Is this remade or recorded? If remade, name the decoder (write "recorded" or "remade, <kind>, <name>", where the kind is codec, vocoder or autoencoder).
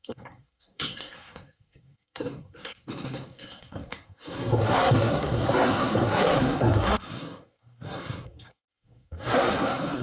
remade, codec, SNAC